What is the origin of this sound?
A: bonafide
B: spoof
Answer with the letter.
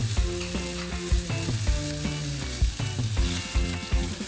A